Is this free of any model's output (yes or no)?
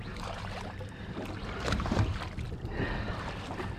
yes